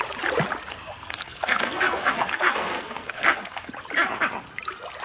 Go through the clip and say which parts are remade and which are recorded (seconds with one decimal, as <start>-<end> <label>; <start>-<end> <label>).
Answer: 0.0-0.7 recorded; 0.7-3.7 remade; 3.7-5.0 recorded